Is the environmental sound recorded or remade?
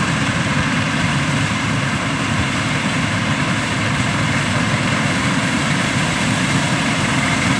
remade